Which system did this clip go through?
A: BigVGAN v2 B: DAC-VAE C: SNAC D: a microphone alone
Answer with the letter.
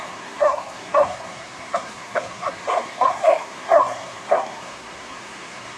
C